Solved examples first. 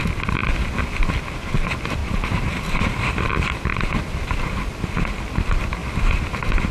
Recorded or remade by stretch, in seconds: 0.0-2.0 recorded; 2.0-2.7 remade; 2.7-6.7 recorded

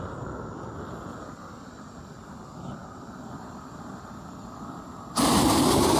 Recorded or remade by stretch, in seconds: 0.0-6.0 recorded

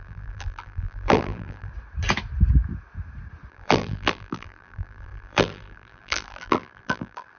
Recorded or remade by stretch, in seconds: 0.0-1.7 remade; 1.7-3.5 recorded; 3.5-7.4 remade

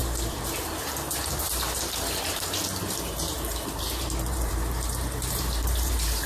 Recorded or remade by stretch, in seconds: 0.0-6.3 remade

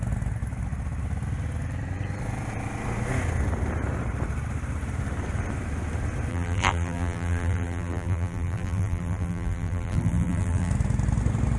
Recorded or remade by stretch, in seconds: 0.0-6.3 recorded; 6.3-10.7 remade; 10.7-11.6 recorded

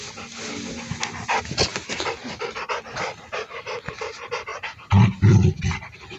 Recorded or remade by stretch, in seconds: 0.0-6.2 recorded

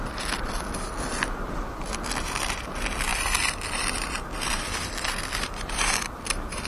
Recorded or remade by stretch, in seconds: 0.0-3.1 recorded; 3.1-6.7 remade